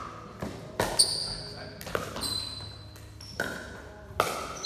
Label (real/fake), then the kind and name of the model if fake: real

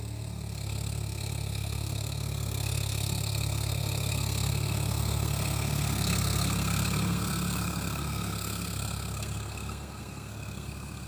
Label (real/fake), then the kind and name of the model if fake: fake, codec, SNAC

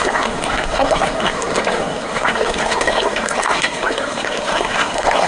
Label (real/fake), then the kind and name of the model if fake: fake, codec, SNAC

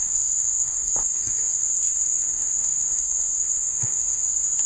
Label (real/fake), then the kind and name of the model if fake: fake, codec, SNAC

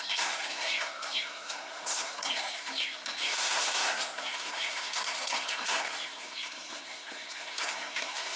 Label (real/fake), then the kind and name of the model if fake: fake, codec, SNAC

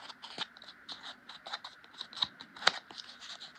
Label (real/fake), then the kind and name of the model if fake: real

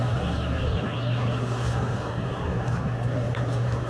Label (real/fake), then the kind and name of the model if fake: fake, codec, SNAC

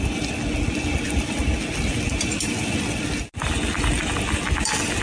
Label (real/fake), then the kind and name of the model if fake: real